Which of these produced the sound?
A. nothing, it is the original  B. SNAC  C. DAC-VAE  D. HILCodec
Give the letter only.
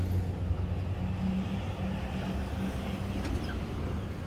A